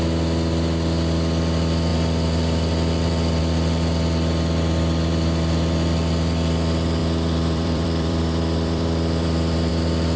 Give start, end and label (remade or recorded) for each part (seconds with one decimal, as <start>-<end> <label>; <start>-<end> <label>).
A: 0.0-1.9 recorded; 1.9-3.4 remade; 3.4-7.0 recorded; 7.0-9.7 remade; 9.7-10.2 recorded